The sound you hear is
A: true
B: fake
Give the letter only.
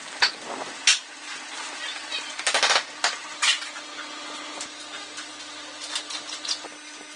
A